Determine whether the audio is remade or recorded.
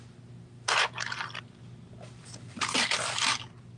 recorded